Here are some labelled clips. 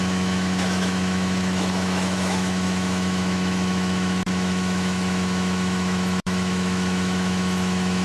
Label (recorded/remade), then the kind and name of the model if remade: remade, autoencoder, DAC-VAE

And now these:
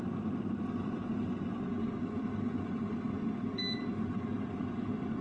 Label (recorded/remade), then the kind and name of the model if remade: recorded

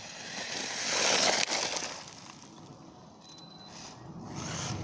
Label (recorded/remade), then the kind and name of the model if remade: recorded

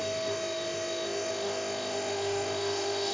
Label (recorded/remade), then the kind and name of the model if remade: remade, autoencoder, DAC-VAE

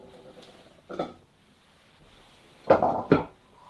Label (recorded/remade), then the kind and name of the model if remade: recorded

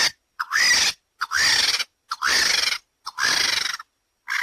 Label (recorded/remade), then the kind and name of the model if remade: recorded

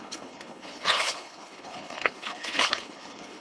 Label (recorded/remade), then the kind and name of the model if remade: remade, codec, HILCodec